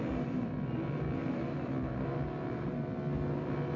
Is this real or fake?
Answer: real